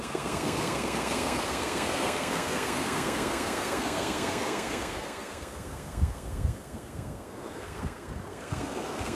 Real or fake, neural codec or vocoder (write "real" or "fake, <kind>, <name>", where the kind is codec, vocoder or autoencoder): fake, codec, SNAC